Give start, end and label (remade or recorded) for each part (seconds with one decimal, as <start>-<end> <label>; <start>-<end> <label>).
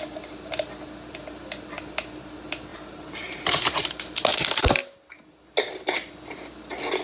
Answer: 0.0-2.7 recorded; 2.7-3.6 remade; 3.6-7.0 recorded